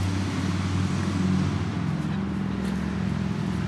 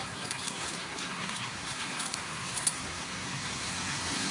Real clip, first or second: first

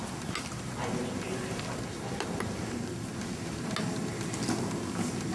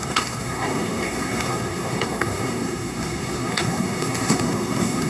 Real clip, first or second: first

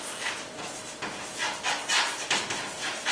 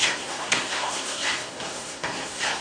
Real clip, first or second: first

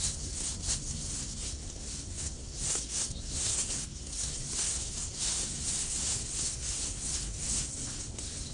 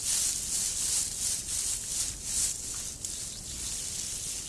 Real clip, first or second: second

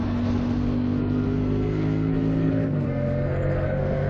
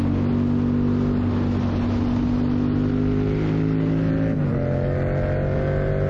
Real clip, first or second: second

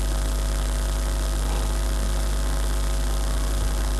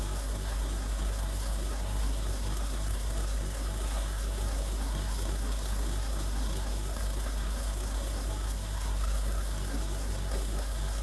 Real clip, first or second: first